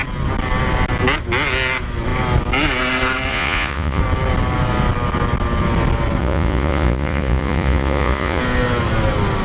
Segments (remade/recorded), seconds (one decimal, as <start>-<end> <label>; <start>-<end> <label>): 0.0-3.3 recorded; 3.3-4.0 remade; 4.0-6.2 recorded; 6.2-8.4 remade; 8.4-9.4 recorded